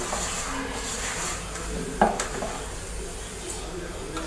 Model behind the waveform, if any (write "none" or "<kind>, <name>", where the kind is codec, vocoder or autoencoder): none